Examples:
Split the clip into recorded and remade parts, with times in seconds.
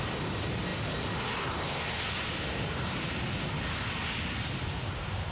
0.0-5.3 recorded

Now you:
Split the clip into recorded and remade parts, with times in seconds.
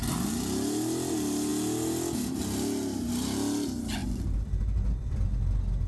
0.0-4.0 recorded; 4.0-4.6 remade; 4.6-5.9 recorded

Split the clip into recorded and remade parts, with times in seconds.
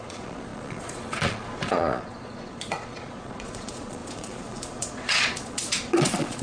0.0-6.4 remade